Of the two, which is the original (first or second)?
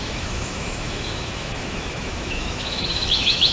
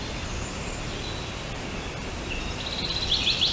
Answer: second